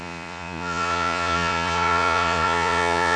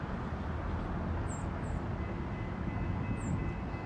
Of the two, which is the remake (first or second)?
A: first